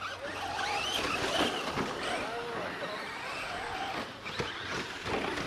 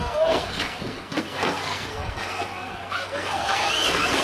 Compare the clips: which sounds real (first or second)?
first